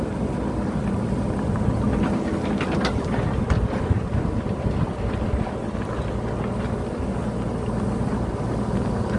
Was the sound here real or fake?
real